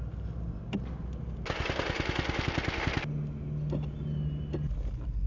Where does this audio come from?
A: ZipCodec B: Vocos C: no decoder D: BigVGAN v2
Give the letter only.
C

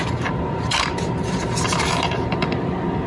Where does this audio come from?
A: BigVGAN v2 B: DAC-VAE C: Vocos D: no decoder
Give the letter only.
A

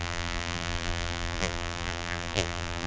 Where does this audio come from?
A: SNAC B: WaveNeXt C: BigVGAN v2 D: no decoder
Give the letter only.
C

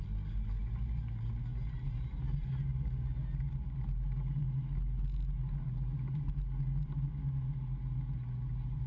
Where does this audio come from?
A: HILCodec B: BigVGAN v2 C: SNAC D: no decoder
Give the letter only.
D